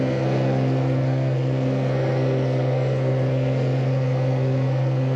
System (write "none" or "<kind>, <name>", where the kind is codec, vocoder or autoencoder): codec, SNAC